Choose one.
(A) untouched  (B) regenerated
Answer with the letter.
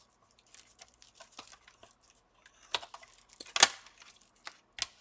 A